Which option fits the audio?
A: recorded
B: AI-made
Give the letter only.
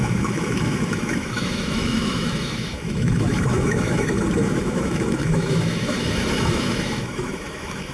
B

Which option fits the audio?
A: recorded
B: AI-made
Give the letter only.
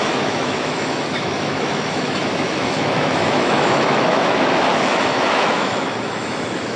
B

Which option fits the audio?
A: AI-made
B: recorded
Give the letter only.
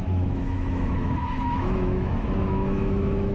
A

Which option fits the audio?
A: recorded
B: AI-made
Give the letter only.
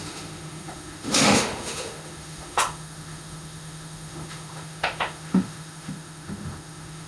B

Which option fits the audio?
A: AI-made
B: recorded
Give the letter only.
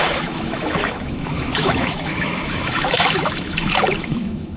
A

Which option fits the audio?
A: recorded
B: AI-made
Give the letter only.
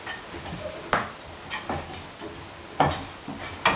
A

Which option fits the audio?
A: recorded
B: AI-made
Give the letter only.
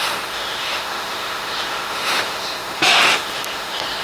B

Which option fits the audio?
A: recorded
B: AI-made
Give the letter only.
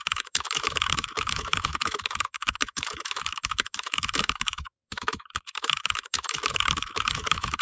B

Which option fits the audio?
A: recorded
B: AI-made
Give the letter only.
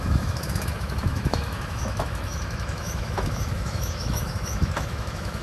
B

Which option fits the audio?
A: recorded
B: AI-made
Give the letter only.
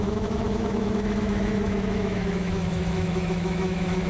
B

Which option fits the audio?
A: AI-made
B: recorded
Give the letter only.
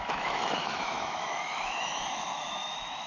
A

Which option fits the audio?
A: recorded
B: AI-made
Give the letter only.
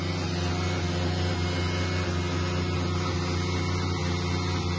A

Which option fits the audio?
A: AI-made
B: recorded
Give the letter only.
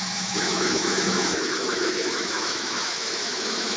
A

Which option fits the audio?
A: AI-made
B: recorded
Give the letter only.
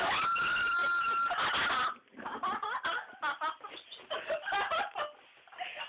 B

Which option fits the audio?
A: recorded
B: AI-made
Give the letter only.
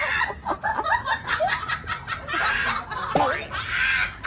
A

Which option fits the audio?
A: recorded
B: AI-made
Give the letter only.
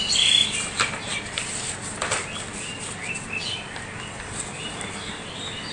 A